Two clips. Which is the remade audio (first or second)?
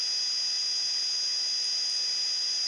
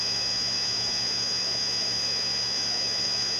second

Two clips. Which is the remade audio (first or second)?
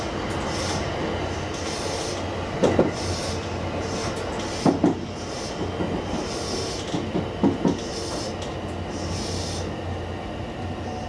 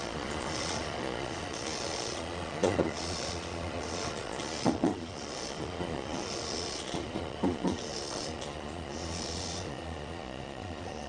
second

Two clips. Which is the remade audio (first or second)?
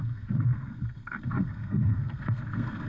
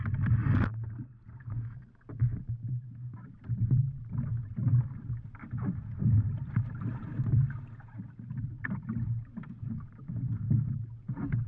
first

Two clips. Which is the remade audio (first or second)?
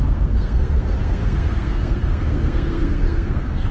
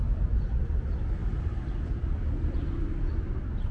first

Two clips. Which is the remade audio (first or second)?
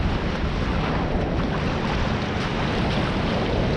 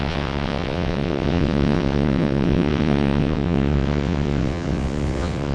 second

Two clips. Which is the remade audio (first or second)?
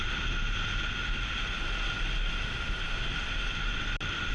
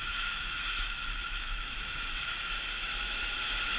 second